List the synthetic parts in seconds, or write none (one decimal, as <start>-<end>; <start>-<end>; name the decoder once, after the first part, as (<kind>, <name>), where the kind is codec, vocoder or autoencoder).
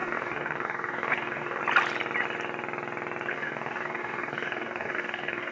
0.0-1.6 (codec, DAC); 3.3-5.5